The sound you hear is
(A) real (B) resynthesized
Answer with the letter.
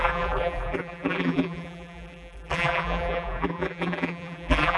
B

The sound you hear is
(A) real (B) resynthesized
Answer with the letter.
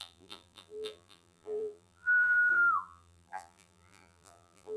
B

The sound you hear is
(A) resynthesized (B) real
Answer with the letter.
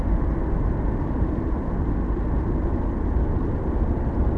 B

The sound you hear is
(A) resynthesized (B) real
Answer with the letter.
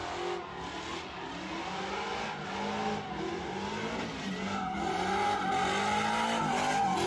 B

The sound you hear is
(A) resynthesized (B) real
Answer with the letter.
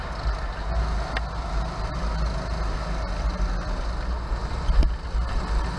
B